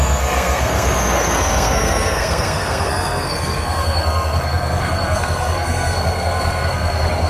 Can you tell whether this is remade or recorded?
remade